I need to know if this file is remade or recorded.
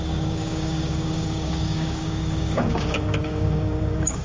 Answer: remade